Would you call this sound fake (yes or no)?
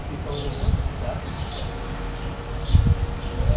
no